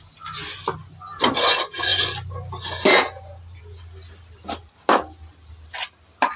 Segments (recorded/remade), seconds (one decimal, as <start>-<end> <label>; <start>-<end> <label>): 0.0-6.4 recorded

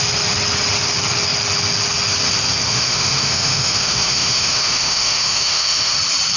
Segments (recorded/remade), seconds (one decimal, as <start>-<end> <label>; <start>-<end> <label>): 0.0-2.7 recorded; 2.7-6.0 remade; 6.0-6.4 recorded

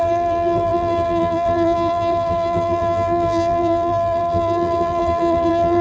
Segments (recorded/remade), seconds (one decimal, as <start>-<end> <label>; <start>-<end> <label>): 0.0-5.8 remade

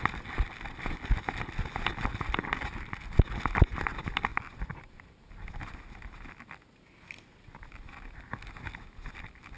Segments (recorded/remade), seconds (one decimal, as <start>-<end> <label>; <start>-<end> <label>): 0.0-9.6 recorded

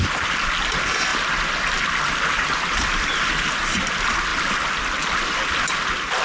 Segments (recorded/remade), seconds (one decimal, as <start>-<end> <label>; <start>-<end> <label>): 0.0-6.2 recorded

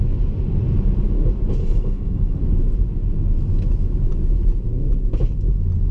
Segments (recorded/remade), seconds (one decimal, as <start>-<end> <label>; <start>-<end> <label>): 0.0-1.6 recorded; 1.6-2.4 remade; 2.4-5.9 recorded

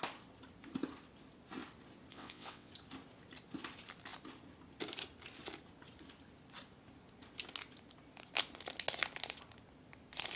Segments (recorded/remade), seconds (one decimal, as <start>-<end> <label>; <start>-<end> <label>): 0.0-2.1 recorded; 2.1-2.7 remade; 2.7-10.4 recorded

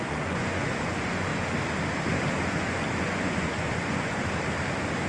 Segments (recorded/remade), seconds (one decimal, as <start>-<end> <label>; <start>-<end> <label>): 0.0-1.3 remade; 1.3-2.5 recorded; 2.5-4.2 remade; 4.2-5.1 recorded